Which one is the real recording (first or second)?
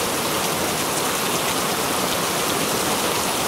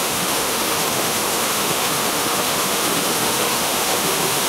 first